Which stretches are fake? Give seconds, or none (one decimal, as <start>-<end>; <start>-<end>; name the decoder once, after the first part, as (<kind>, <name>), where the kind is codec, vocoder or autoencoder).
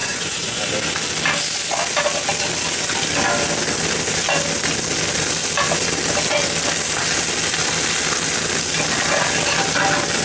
0.0-0.6 (vocoder, Vocos)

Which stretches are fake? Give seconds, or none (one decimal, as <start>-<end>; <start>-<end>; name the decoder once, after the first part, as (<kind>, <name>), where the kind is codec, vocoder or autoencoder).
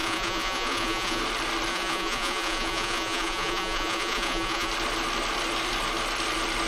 0.0-1.2 (vocoder, Vocos); 1.7-4.7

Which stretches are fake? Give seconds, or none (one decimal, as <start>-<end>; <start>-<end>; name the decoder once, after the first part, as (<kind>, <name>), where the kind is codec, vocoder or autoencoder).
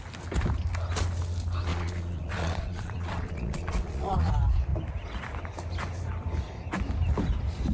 1.7-4.3 (vocoder, Vocos)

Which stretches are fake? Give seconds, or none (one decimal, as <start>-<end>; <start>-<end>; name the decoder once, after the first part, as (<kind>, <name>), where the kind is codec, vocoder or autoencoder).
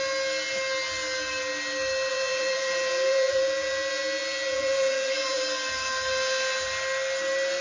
2.1-5.4 (vocoder, Vocos)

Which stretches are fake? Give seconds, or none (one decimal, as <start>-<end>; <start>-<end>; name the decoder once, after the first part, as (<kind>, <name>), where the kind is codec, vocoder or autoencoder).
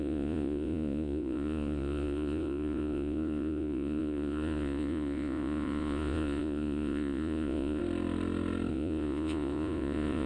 0.0-7.8 (vocoder, Vocos); 8.7-10.3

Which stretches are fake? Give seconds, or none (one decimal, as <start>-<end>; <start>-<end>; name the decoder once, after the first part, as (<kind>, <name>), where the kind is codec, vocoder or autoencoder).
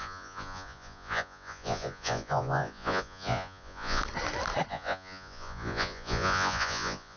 0.0-4.0 (vocoder, Vocos); 4.7-7.2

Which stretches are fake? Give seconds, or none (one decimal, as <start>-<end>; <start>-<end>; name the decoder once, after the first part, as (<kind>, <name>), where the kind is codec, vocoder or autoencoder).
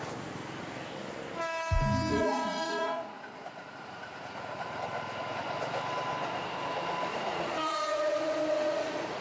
2.1-4.8 (vocoder, Vocos); 7.1-9.2